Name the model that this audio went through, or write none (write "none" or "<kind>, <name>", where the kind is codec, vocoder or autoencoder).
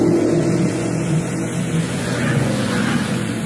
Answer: vocoder, Vocos